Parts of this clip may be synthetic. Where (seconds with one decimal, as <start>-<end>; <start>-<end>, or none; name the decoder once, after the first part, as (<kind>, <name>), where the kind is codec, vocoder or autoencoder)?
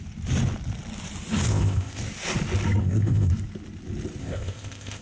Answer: 1.5-2.0 (codec, ZipCodec); 2.8-3.3; 4.2-5.0